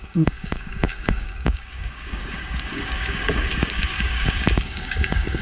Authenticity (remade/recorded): remade